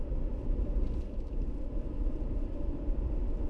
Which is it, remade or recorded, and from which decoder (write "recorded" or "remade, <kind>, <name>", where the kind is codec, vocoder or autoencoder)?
remade, vocoder, BigVGAN v2